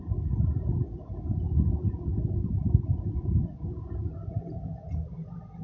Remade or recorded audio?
recorded